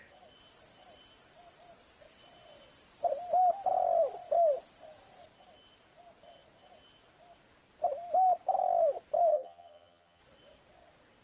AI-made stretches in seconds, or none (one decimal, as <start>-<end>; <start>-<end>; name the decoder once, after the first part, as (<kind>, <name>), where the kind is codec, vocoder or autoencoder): 9.3-10.2 (vocoder, HiFi-GAN)